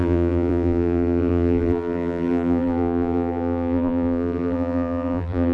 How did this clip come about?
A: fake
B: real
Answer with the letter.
A